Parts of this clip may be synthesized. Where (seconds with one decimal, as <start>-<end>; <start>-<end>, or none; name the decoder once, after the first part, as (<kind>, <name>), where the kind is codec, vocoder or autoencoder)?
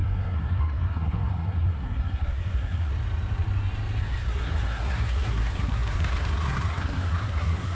0.0-2.9 (codec, SNAC); 4.0-7.7